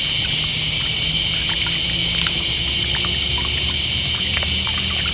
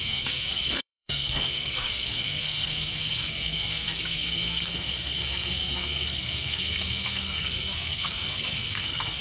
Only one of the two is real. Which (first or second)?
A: first